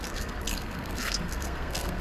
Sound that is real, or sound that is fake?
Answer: fake